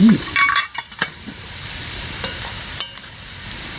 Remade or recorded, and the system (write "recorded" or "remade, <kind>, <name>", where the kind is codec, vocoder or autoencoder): remade, vocoder, BigVGAN v2